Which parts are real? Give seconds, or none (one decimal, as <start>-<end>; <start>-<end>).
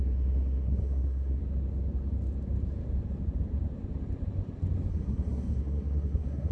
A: 1.4-4.9